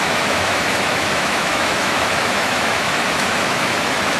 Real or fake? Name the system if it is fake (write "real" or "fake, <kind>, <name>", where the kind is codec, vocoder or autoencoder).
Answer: fake, autoencoder, DAC-VAE